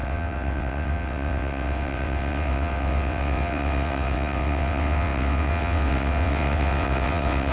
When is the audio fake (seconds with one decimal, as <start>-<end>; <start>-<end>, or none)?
0.0-7.5